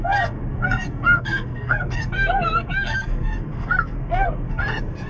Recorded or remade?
remade